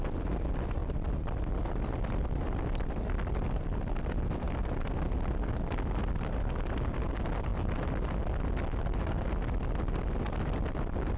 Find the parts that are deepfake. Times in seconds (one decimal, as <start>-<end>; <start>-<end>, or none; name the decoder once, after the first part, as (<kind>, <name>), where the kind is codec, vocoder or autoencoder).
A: 0.8-4.9 (vocoder, BigVGAN v2)